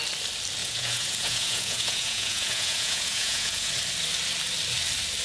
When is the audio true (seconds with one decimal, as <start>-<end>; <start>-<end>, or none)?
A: 0.0-0.6; 3.7-5.2